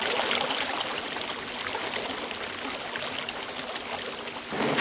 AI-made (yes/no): no